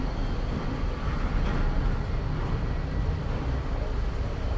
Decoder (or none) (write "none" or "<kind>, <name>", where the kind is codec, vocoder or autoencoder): none